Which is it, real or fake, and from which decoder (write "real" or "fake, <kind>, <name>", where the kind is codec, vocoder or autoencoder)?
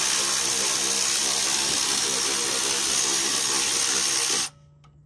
real